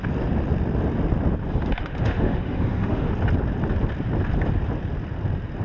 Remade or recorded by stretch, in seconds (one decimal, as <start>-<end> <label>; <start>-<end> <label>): 0.0-1.8 recorded; 1.8-3.1 remade; 3.1-5.6 recorded